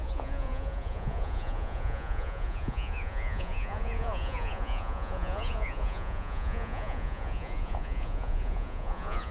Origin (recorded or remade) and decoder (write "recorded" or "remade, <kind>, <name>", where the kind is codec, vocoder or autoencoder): remade, vocoder, Vocos